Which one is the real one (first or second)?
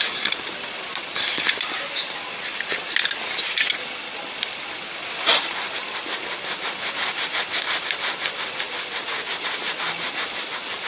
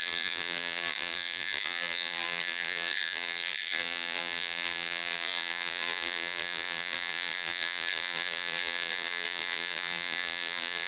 first